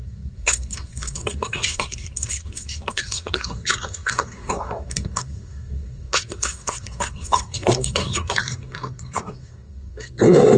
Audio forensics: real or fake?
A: fake